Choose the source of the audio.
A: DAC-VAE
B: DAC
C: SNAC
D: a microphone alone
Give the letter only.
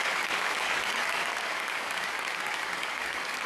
B